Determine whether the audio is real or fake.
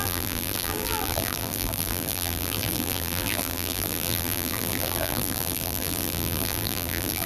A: fake